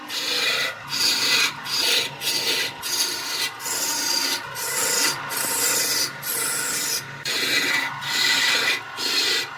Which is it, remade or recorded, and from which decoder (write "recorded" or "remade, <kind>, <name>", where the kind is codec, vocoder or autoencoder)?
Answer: recorded